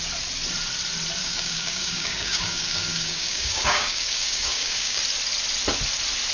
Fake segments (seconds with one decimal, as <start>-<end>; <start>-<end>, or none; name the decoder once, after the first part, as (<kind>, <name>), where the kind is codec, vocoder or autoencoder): 1.2-5.0 (codec, DAC)